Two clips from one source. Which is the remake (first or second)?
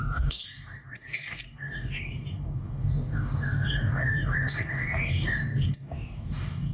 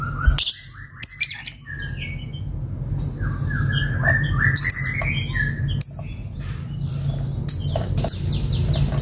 first